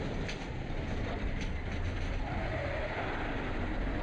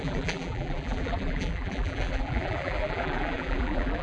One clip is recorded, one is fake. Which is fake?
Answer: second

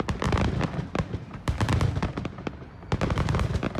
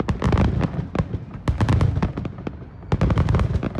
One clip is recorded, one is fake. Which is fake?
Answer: first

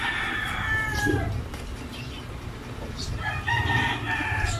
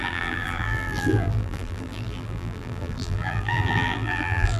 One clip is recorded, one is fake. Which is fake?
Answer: second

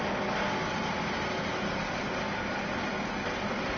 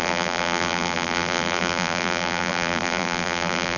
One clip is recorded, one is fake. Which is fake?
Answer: second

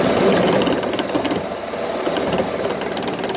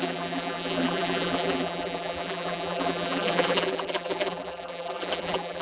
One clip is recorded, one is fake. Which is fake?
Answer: second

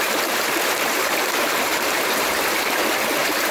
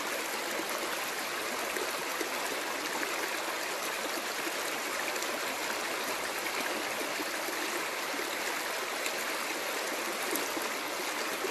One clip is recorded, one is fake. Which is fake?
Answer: first